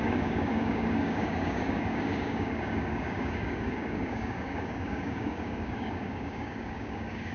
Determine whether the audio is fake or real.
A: fake